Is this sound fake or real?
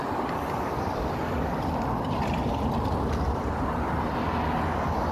real